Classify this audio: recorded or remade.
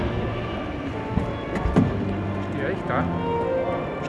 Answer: recorded